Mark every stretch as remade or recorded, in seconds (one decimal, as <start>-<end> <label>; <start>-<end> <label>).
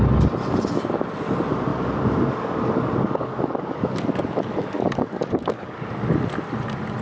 0.0-1.7 recorded; 1.7-5.9 remade; 5.9-7.0 recorded